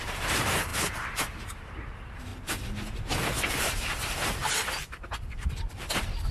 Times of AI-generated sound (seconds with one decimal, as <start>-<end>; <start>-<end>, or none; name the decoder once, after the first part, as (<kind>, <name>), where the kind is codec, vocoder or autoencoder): 0.0-2.3 (vocoder, BigVGAN v2); 3.5-6.3